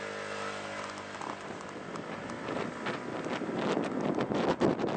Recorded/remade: recorded